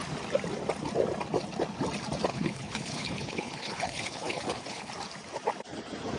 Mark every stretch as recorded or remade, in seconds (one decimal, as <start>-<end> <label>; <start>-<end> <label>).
0.0-2.3 recorded; 2.3-4.9 remade; 4.9-6.2 recorded